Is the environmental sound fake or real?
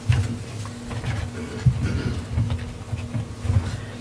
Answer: real